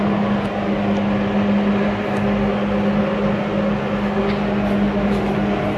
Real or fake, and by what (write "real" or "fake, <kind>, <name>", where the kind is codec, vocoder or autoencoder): real